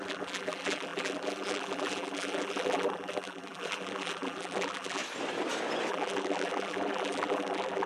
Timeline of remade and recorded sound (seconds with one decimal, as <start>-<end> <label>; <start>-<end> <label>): 0.0-5.0 remade; 5.0-5.9 recorded; 5.9-7.9 remade